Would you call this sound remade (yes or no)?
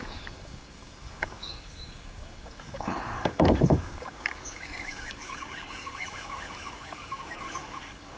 yes